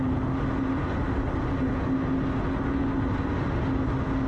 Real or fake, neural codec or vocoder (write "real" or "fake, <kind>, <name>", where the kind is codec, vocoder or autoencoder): real